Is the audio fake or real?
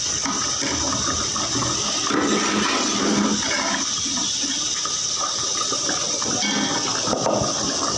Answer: real